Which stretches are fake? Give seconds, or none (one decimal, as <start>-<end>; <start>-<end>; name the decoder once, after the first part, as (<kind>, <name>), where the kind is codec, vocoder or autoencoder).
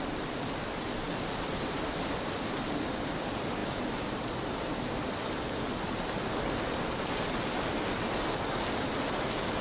none